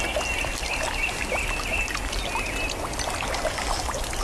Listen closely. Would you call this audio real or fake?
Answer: real